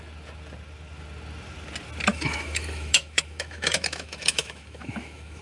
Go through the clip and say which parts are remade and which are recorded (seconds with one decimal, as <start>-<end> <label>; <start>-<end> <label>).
0.0-2.1 recorded; 2.1-5.4 remade